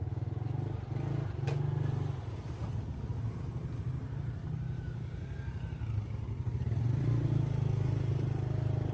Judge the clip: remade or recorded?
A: recorded